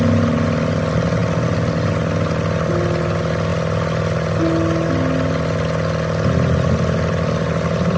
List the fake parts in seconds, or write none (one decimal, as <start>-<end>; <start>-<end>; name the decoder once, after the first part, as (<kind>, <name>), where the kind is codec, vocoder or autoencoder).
none

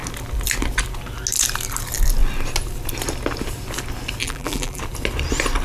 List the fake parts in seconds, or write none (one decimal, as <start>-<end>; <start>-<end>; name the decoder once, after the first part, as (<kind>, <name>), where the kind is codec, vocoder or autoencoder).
4.2-4.8 (vocoder, BigVGAN v2)